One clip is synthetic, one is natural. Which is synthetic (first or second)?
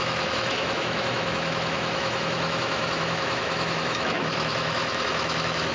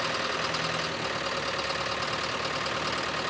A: first